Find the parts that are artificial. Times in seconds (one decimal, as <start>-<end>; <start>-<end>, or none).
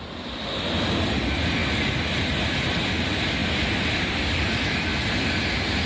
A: 0.0-1.6; 2.9-4.9